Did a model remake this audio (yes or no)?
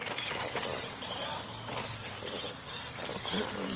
no